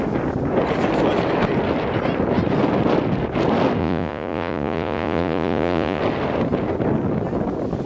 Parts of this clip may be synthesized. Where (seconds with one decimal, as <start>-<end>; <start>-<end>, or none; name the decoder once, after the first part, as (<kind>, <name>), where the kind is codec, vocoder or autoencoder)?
3.8-6.0 (vocoder, Vocos)